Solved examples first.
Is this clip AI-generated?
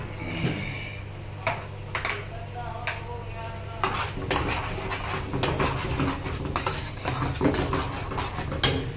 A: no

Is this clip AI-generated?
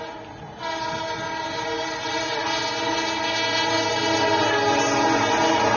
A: no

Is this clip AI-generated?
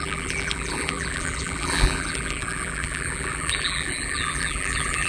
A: yes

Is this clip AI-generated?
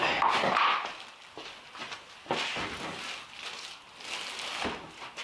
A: no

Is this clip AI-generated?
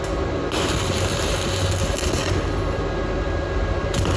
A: no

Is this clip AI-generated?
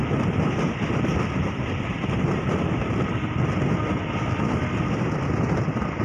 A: no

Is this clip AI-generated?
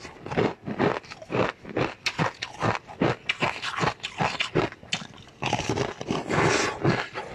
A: no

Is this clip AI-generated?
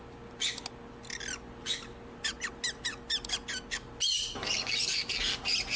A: no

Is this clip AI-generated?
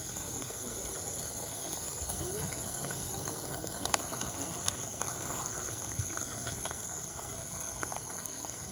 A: yes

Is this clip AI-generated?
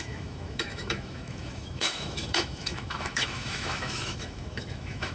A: yes